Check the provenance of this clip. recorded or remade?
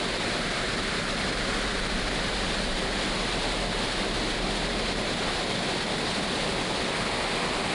recorded